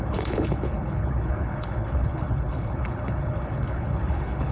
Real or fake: fake